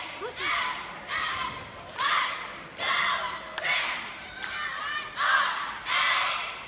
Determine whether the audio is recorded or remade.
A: recorded